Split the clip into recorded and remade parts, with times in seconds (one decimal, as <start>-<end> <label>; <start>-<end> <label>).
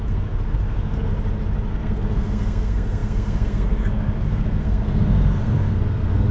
0.0-1.1 remade; 1.1-1.7 recorded; 1.7-6.3 remade